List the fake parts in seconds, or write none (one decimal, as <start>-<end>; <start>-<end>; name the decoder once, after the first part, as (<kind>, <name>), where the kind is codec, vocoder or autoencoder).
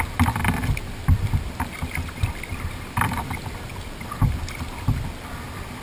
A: none